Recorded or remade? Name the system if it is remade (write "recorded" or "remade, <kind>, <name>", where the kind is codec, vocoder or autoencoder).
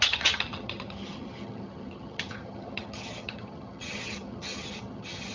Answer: remade, vocoder, HiFi-GAN